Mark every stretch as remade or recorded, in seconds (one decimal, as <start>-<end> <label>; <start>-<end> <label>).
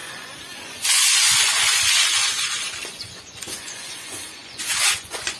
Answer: 0.0-5.4 remade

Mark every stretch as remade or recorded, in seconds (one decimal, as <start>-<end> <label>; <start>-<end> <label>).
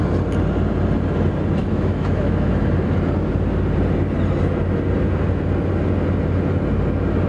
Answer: 0.0-1.6 recorded; 1.6-2.5 remade; 2.5-7.3 recorded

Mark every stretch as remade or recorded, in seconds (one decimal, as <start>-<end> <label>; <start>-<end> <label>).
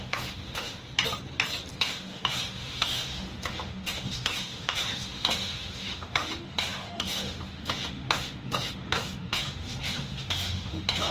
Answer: 0.0-0.8 remade; 0.8-1.7 recorded; 1.7-11.1 remade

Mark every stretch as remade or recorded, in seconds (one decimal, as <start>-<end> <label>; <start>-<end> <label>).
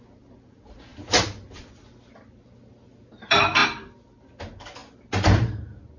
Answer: 0.0-6.0 recorded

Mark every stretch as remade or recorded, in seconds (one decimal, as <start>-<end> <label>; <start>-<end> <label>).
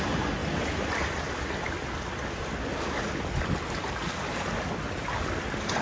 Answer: 0.0-5.8 recorded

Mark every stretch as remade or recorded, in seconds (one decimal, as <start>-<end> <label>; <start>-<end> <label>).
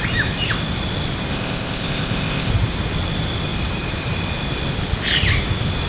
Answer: 0.0-1.3 recorded; 1.3-2.5 remade; 2.5-5.9 recorded